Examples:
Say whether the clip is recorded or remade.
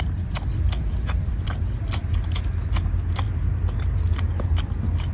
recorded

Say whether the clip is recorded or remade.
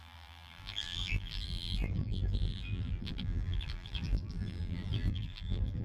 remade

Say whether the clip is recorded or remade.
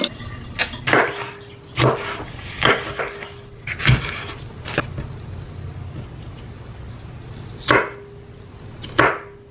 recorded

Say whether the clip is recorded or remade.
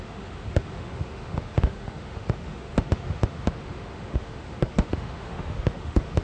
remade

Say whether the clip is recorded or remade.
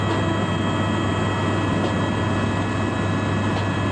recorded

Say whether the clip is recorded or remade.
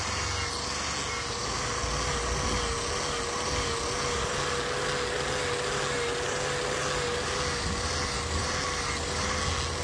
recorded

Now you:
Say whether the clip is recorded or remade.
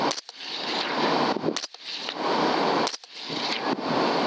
recorded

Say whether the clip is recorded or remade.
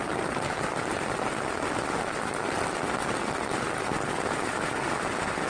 recorded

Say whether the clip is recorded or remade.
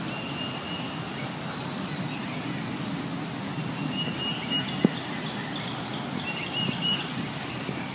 recorded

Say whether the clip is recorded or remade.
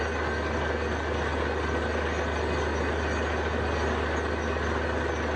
recorded